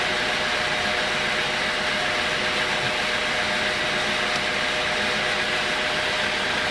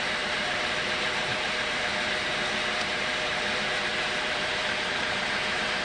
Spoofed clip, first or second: second